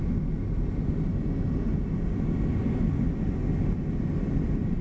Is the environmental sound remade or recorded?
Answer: recorded